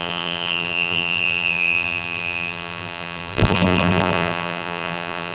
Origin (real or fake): fake